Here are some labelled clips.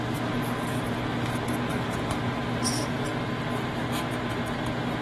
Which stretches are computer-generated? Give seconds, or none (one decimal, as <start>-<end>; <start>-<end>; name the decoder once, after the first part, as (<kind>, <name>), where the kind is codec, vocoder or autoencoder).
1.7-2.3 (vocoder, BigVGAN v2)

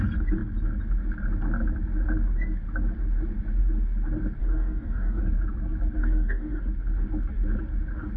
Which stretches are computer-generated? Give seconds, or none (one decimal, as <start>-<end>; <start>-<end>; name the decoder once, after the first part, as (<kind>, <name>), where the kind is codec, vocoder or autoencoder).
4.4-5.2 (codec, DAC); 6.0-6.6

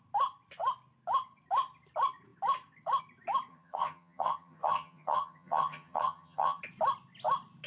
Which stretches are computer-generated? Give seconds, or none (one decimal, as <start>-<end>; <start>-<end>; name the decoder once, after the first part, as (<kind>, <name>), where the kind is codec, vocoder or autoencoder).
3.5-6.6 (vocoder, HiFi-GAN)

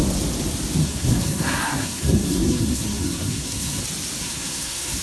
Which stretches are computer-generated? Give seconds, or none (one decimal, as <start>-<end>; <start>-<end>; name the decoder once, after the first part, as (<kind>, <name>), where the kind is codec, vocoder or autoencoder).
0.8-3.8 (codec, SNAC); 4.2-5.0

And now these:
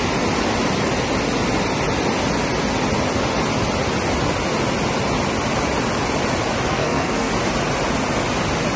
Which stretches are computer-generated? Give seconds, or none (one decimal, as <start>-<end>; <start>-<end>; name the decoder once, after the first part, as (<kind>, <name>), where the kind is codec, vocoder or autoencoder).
6.7-7.3 (codec, SNAC)

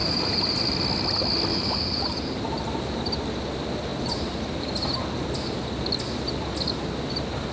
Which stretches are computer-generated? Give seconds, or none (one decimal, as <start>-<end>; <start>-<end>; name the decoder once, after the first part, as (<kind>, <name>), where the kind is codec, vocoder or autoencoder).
0.0-0.6 (vocoder, BigVGAN v2); 1.5-3.0; 3.9-5.0

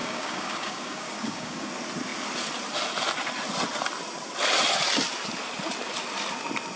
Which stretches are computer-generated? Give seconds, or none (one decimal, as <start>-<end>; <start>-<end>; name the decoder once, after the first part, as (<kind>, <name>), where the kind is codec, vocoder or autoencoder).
0.0-1.7 (codec, DAC)

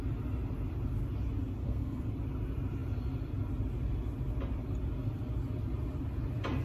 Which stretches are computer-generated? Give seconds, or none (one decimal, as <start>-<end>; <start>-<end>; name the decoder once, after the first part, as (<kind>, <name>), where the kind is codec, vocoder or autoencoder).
1.6-2.1 (codec, SNAC)